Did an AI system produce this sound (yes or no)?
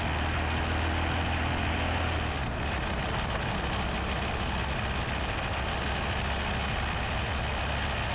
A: no